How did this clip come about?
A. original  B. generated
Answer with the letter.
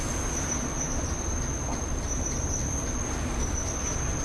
A